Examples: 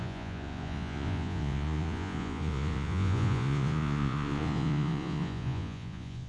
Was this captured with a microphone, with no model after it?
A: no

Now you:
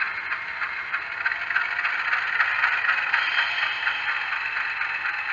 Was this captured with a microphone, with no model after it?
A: yes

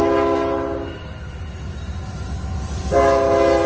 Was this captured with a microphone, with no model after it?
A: yes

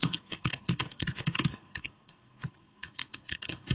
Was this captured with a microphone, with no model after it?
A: no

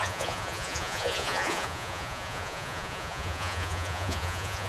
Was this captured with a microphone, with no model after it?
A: no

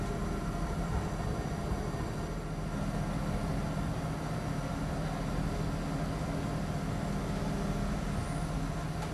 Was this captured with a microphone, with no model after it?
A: yes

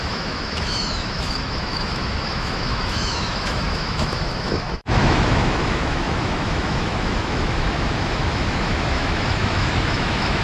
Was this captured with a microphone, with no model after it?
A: no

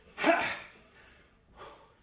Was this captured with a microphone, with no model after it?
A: no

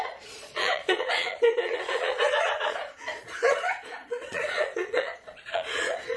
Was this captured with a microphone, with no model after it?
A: no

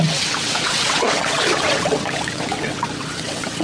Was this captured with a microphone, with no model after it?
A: no